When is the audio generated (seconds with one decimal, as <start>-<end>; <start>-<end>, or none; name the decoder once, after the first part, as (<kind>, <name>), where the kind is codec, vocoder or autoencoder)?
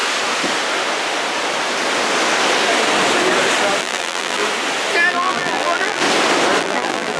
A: 3.8-4.4 (vocoder, BigVGAN v2); 5.1-6.0; 6.6-7.2